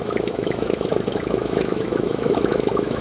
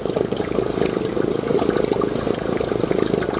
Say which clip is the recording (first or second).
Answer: second